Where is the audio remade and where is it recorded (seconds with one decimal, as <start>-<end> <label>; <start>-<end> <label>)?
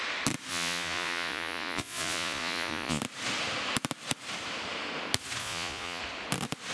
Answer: 0.0-0.5 recorded; 0.5-3.0 remade; 3.0-5.4 recorded; 5.4-6.0 remade; 6.0-6.7 recorded